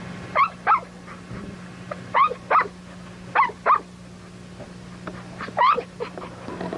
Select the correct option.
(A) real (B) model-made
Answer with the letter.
A